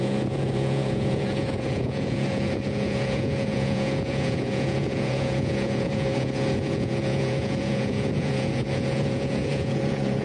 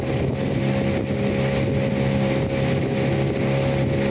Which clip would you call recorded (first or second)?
second